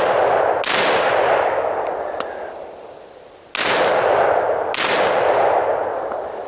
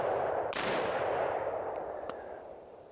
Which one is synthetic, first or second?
second